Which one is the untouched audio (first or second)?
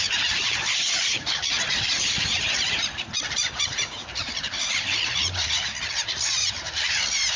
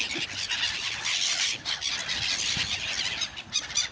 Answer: second